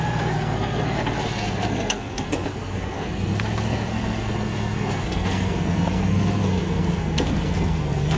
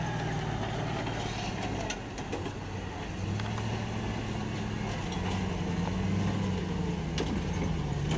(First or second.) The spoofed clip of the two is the first